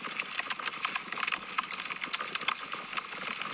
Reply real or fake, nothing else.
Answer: real